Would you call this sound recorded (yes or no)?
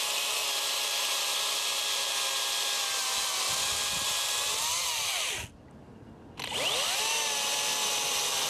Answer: yes